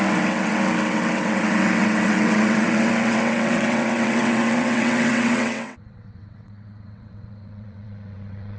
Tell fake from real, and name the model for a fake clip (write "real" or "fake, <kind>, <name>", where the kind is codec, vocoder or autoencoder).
fake, vocoder, WaveNeXt